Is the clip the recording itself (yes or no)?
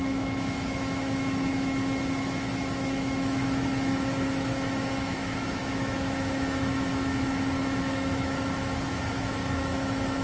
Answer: no